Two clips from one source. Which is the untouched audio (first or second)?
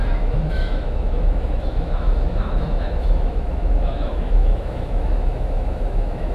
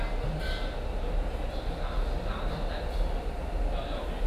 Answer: second